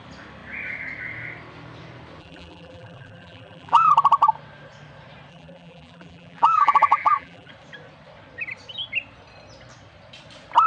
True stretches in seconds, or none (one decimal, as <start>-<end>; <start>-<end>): 0.0-2.2; 3.9-5.3; 7.5-10.7